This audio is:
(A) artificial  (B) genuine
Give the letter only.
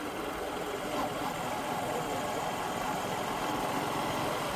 B